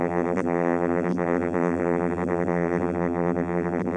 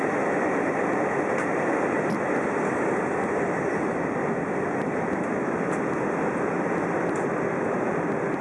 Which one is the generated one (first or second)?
first